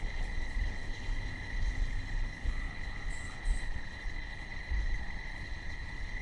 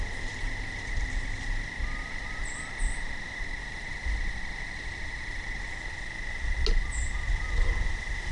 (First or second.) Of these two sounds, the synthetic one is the first